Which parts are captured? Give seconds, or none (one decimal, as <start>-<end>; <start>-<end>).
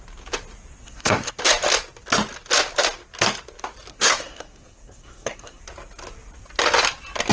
0.0-0.8; 1.3-3.9; 5.6-7.3